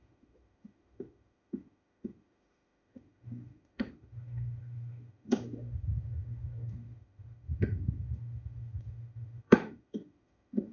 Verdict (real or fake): fake